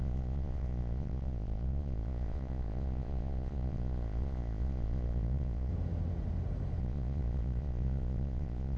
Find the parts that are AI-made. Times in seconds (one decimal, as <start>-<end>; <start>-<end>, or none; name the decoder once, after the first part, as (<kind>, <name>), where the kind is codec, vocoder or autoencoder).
0.0-5.7 (vocoder, Vocos); 6.8-8.8